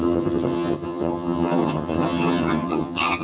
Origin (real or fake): fake